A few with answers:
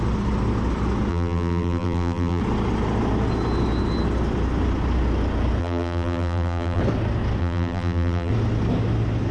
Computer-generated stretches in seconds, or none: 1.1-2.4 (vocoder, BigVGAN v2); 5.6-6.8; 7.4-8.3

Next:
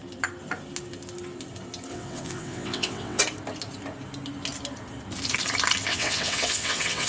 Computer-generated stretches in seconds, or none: 1.9-3.2 (vocoder, WaveNeXt); 5.9-7.1

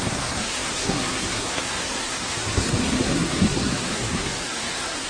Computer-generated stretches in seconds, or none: 0.0-5.1 (codec, SNAC)

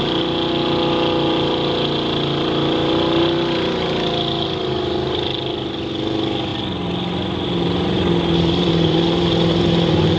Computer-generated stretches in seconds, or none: none

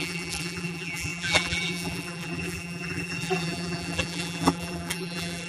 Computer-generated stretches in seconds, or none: 0.0-5.5 (vocoder, BigVGAN v2)

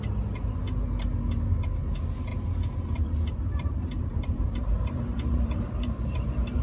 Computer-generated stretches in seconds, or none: 2.3-6.6 (vocoder, BigVGAN v2)

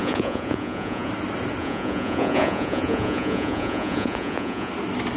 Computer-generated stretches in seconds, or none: 0.0-1.1 (vocoder, Vocos); 1.6-4.7